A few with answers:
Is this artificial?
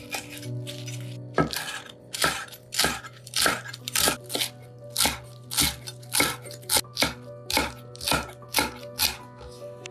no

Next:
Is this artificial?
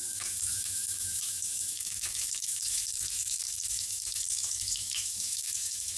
yes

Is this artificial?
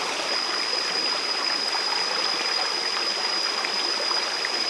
no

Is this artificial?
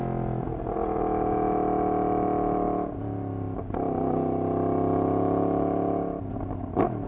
no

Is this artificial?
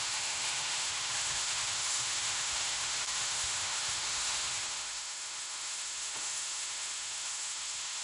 yes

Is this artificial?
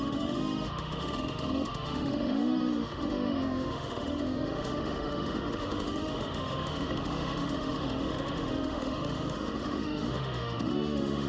yes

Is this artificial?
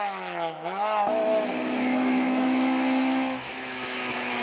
yes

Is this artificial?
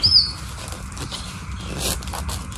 no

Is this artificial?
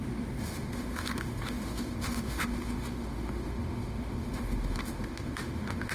yes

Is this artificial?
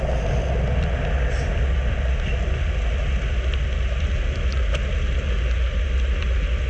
no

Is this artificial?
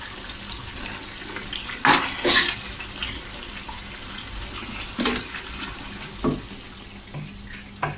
no